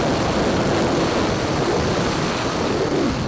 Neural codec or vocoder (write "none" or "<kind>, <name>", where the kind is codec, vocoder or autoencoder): none